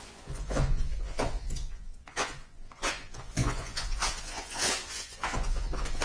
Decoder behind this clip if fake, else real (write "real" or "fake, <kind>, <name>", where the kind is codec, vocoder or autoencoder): fake, vocoder, Vocos